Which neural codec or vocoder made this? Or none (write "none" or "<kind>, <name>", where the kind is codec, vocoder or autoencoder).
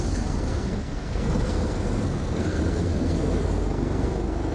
codec, SNAC